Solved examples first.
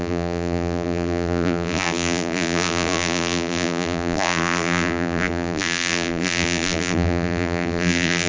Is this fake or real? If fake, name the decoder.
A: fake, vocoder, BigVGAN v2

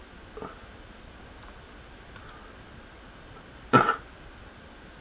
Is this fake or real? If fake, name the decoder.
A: real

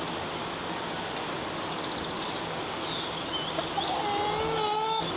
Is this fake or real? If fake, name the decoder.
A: real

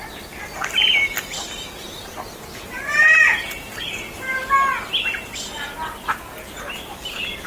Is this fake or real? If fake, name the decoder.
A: real